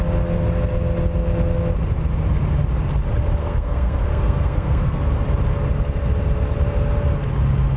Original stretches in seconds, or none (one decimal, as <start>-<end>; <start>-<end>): 0.0-3.4; 5.0-7.8